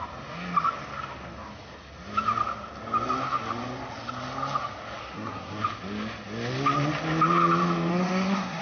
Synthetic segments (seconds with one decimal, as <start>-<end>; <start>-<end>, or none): 5.0-5.6; 7.9-8.6